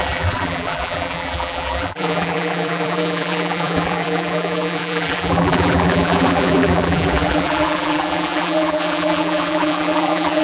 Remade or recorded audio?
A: remade